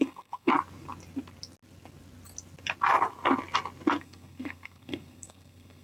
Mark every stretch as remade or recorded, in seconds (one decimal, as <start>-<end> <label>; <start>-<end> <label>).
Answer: 0.0-0.5 remade; 0.5-4.0 recorded; 4.0-5.8 remade